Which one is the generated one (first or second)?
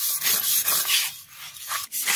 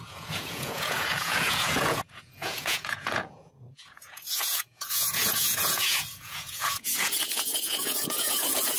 second